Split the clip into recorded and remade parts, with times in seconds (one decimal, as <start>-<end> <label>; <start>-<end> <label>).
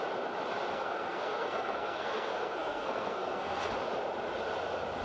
0.0-0.7 recorded; 0.7-3.7 remade; 3.7-5.0 recorded